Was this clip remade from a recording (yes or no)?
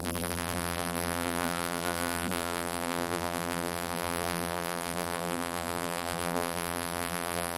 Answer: yes